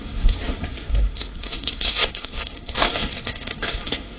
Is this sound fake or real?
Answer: fake